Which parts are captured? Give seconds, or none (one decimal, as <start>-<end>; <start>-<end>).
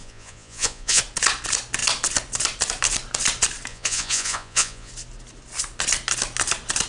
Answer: 1.0-3.7; 4.9-6.9